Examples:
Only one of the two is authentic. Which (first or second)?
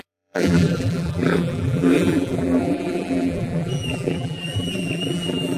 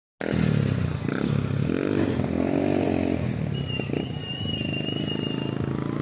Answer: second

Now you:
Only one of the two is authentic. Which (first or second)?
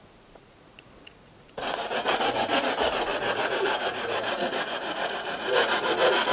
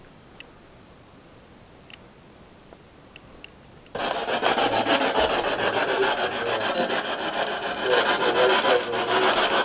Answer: second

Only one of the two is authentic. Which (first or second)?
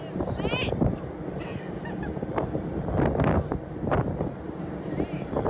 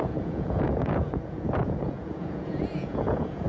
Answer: first